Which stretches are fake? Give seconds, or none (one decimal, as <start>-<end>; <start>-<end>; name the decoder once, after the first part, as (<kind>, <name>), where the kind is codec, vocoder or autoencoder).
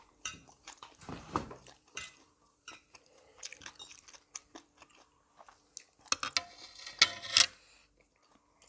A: 0.0-3.5 (vocoder, BigVGAN v2)